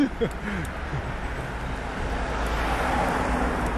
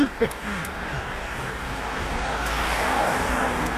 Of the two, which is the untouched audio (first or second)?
first